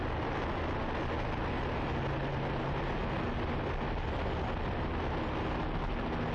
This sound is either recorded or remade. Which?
recorded